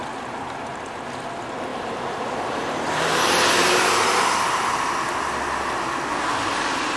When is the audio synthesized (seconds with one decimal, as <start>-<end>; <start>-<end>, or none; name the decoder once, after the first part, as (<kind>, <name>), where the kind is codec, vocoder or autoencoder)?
1.7-4.9 (vocoder, BigVGAN v2)

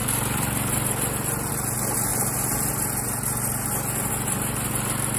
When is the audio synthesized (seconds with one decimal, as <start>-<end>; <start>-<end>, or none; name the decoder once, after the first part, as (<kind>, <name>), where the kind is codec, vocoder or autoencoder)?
none

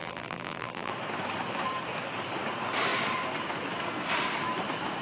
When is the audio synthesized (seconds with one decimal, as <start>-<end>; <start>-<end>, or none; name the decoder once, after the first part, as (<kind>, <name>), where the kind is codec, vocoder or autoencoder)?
0.0-0.9 (vocoder, BigVGAN v2)

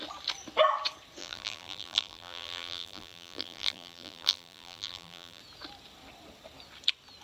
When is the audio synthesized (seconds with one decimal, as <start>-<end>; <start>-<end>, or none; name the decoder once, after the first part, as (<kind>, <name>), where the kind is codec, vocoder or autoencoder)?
1.2-5.4 (vocoder, BigVGAN v2)